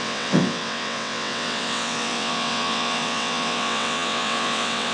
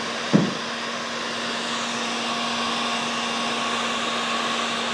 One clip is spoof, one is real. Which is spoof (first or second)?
first